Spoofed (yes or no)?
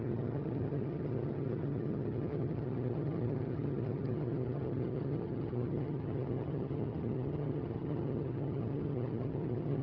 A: yes